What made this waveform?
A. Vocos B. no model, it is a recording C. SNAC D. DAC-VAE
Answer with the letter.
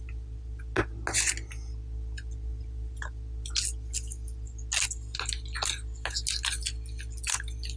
B